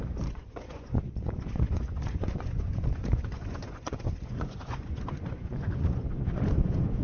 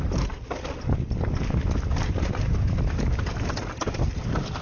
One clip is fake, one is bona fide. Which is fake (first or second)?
first